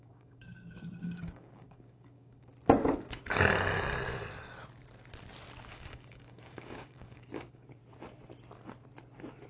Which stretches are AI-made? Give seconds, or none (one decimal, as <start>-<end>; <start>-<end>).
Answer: 0.0-2.5; 5.6-7.8

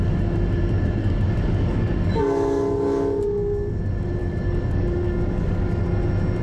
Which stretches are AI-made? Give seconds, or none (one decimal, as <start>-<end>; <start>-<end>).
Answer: 1.0-3.7; 4.2-5.8

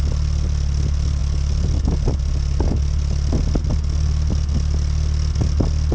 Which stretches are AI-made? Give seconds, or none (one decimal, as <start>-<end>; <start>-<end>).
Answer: none

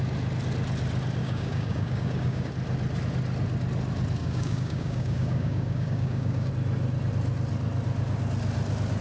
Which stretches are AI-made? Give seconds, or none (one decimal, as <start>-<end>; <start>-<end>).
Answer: 1.2-2.5; 4.2-6.5